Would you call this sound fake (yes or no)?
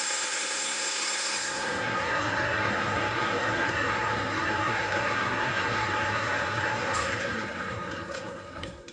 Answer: yes